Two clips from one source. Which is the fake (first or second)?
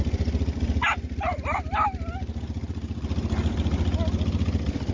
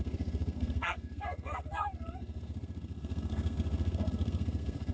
second